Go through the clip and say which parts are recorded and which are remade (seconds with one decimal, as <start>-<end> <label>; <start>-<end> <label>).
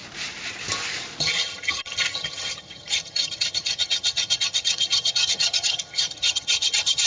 0.0-1.2 recorded; 1.2-7.1 remade